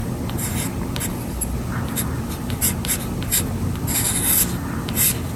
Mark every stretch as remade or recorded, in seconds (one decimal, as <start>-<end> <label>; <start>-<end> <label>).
0.0-5.4 recorded